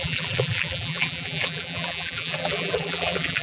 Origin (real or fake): fake